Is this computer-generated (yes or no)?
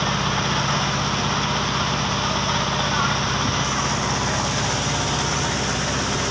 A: no